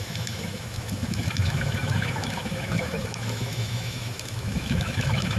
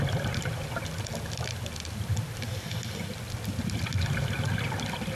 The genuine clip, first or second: second